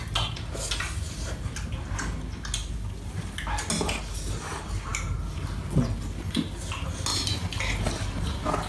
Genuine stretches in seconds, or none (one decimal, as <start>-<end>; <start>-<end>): 0.0-8.7